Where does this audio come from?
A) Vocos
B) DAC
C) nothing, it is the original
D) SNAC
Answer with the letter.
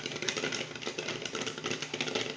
C